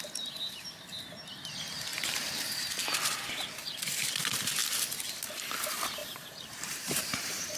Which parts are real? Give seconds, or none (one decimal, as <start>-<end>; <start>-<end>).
0.0-1.9; 2.7-6.0